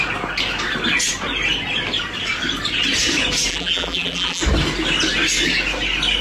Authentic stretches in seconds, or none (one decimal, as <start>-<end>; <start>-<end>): 0.0-3.5; 4.4-6.2